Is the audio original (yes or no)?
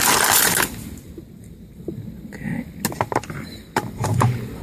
yes